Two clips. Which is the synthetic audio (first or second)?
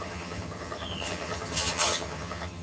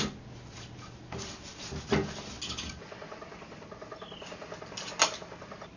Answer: first